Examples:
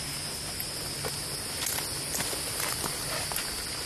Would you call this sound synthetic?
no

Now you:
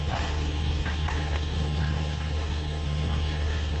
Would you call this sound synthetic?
yes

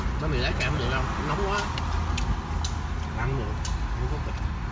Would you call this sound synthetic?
no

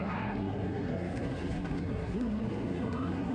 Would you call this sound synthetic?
yes